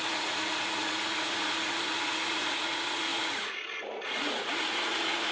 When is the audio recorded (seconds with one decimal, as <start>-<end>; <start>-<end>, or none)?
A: none